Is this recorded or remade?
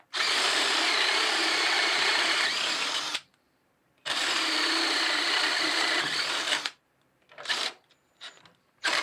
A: remade